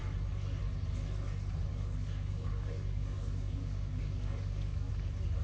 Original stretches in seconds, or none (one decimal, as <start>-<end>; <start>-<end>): 0.0-1.7; 4.9-5.4